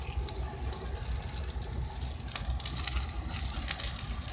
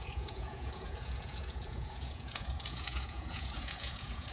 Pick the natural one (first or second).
first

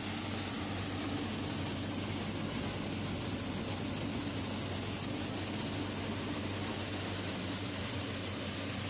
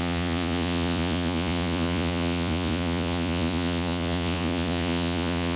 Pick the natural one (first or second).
first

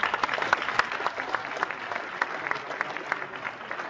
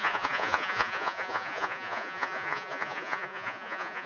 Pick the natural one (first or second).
first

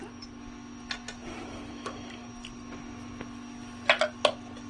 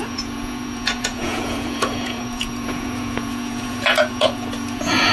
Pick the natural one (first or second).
first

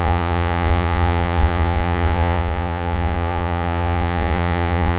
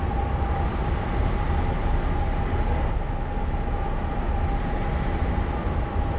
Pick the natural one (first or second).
second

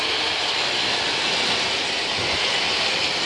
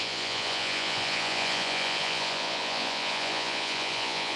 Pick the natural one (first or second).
first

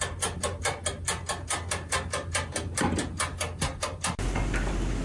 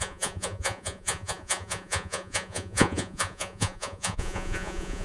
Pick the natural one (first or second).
first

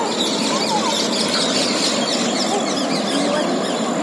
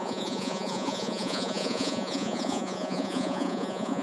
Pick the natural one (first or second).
first